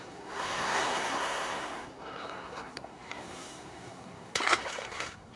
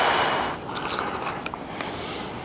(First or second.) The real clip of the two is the second